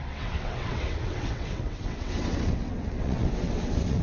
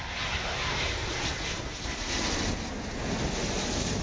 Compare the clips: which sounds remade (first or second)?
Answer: first